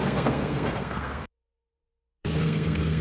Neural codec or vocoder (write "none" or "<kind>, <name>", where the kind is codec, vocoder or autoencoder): codec, SNAC